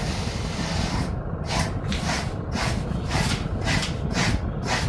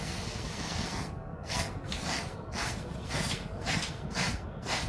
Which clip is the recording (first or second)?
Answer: first